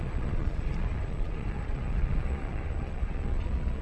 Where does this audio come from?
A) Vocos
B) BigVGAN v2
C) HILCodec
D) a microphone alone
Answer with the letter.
A